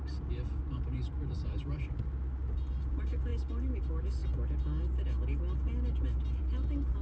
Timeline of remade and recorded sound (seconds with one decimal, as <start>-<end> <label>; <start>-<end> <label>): 0.0-1.2 recorded; 1.2-2.0 remade; 2.0-7.0 recorded